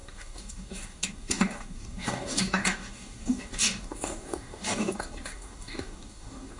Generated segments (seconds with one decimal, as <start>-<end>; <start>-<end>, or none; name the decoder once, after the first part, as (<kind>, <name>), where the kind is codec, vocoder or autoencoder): 0.0-6.6 (codec, DAC)